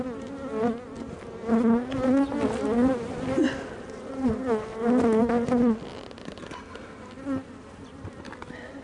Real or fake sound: real